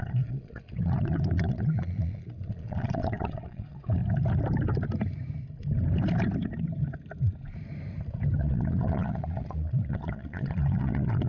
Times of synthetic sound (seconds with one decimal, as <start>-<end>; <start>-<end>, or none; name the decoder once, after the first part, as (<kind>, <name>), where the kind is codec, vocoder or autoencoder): 0.0-4.0 (vocoder, Vocos); 8.4-11.3